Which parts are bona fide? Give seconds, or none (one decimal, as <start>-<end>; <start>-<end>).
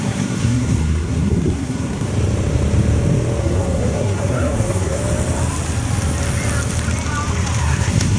2.1-3.4; 5.0-7.6